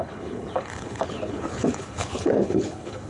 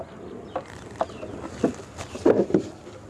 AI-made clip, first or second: first